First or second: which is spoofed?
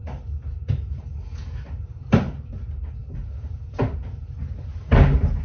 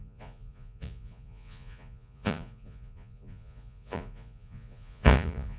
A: second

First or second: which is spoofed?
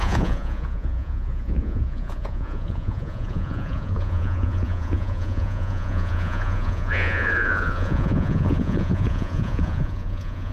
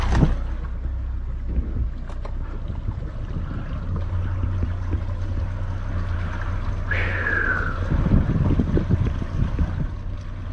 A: first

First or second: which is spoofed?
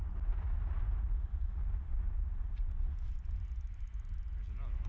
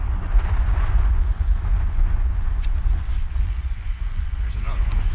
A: second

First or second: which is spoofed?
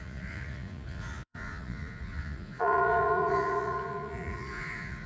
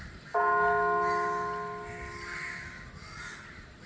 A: first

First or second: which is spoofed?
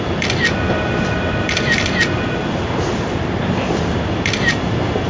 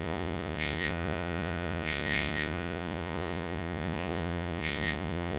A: second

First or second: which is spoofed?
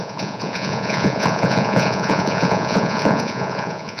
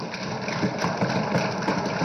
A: first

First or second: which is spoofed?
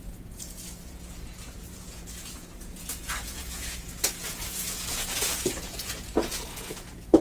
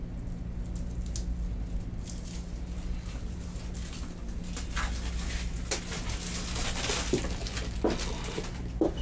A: first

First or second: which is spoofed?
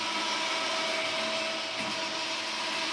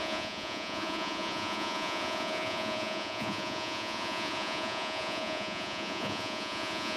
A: second